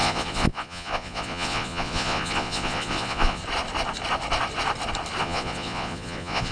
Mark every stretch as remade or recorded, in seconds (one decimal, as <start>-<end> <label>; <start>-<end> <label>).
0.0-3.4 remade; 3.4-5.2 recorded; 5.2-6.5 remade